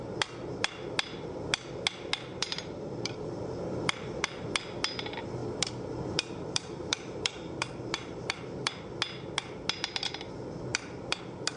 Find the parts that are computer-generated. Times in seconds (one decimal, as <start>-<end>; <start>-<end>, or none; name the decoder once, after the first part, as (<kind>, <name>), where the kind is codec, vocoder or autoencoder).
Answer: 2.3-4.5 (vocoder, BigVGAN v2); 5.4-8.7; 10.7-11.2